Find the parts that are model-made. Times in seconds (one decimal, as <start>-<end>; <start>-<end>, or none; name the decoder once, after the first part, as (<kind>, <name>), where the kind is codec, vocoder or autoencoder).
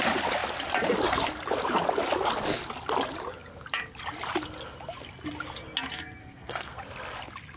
6.2-6.8 (codec, SNAC)